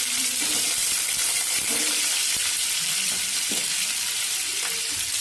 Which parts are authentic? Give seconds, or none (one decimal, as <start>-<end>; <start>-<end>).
2.2-2.9